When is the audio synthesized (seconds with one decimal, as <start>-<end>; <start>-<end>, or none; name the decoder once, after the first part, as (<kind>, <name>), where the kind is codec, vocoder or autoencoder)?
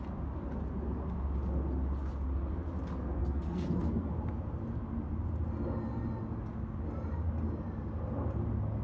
3.2-4.1 (codec, SNAC)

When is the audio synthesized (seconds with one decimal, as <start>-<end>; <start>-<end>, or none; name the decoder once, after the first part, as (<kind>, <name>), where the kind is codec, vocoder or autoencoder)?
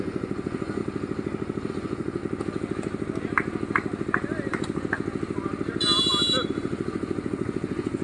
0.0-0.8 (vocoder, Vocos); 1.7-2.2; 6.5-8.0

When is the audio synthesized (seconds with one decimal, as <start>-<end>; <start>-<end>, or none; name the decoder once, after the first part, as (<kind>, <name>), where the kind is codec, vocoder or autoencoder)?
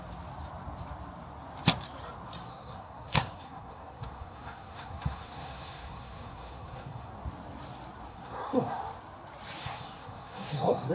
2.5-7.1 (codec, SNAC); 8.1-8.8; 9.6-10.9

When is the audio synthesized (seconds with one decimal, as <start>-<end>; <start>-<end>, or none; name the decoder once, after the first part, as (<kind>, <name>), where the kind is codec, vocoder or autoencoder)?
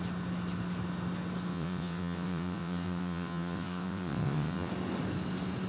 1.5-4.7 (vocoder, WaveNeXt)